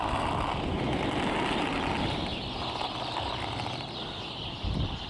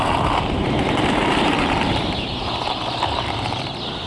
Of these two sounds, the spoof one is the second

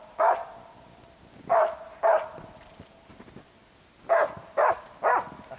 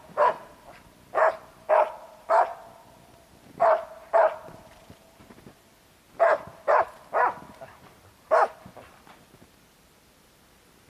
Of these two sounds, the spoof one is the second